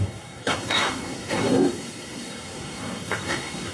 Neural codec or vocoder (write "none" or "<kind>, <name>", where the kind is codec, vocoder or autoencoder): codec, SNAC